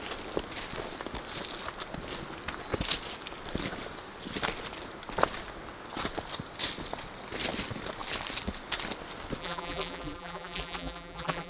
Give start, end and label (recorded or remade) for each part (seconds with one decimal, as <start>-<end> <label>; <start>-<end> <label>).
0.0-9.4 recorded; 9.4-11.5 remade